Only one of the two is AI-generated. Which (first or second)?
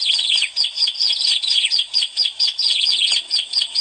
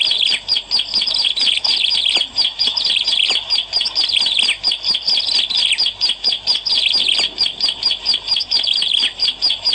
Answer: first